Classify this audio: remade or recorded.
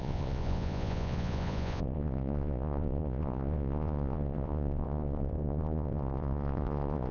remade